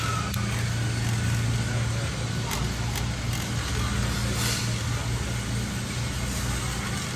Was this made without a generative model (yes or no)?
yes